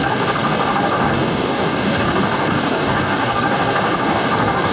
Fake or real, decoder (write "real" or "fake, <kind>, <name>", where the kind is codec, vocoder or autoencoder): fake, codec, DAC